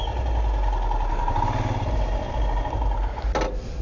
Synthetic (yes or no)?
no